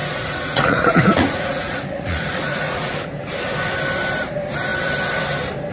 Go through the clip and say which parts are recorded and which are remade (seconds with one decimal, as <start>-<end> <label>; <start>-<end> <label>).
0.0-2.9 remade; 2.9-5.7 recorded